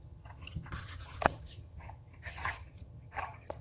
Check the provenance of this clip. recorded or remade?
remade